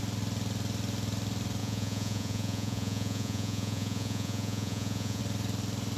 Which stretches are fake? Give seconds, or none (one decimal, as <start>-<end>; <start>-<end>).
1.6-5.2